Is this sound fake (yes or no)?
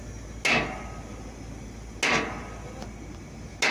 no